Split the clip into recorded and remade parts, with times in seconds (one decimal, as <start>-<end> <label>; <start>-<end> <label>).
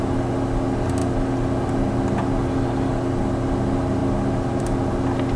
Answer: 0.0-5.4 recorded